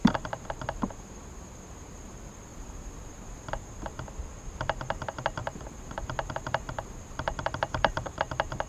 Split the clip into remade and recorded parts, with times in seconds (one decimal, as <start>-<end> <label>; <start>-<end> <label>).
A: 0.0-2.0 remade; 2.0-2.5 recorded; 2.5-3.5 remade; 3.5-5.4 recorded; 5.4-8.2 remade; 8.2-8.7 recorded